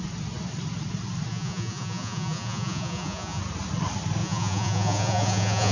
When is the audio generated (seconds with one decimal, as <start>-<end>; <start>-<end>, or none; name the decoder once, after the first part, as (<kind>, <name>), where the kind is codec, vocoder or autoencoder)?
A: 1.3-3.4 (vocoder, Vocos); 4.2-5.7